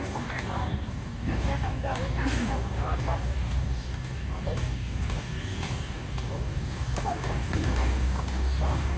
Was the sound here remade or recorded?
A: remade